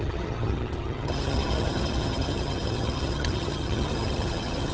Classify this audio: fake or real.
fake